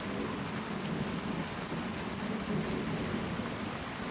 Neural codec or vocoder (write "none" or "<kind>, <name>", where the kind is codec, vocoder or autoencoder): none